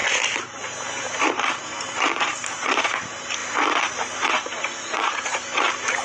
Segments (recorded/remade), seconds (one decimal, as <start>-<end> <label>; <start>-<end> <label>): 0.0-1.0 recorded; 1.0-6.0 remade